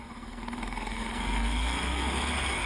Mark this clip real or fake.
fake